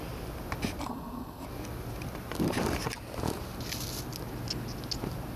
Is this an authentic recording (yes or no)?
yes